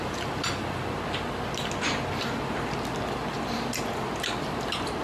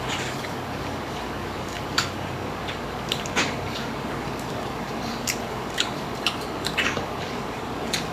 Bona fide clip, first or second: first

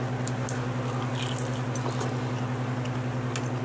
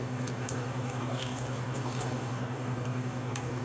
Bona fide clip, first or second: first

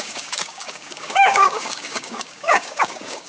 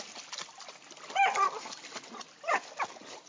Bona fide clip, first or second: second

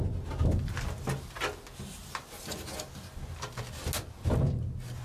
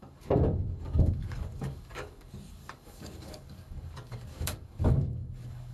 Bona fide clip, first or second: first